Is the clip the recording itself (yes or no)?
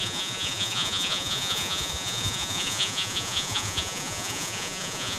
no